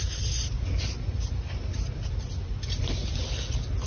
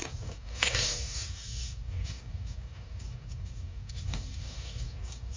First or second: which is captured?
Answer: first